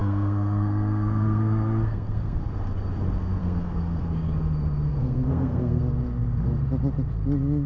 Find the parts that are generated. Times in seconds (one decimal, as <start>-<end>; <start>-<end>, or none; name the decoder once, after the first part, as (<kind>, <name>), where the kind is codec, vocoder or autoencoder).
0.0-2.4 (codec, SNAC); 3.4-4.0; 4.9-5.8